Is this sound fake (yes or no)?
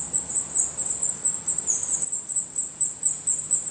no